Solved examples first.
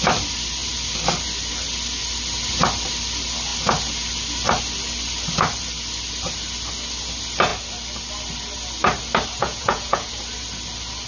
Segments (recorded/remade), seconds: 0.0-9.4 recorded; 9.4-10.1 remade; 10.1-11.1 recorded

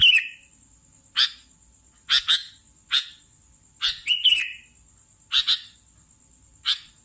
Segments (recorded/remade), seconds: 0.0-7.0 recorded

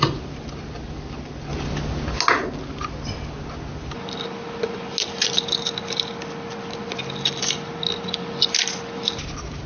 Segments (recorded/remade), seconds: 0.0-9.7 recorded

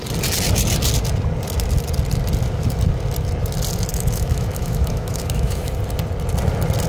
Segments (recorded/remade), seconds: 0.0-3.9 recorded; 3.9-5.7 remade; 5.7-6.9 recorded